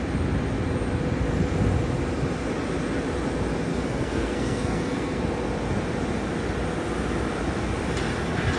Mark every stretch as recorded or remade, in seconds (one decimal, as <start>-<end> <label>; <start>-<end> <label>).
0.0-3.7 recorded; 3.7-5.2 remade; 5.2-8.6 recorded